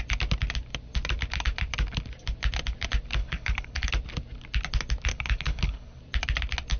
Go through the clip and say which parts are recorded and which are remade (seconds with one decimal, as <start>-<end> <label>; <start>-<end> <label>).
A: 0.0-3.2 recorded; 3.2-3.9 remade; 3.9-5.1 recorded; 5.1-6.0 remade; 6.0-6.8 recorded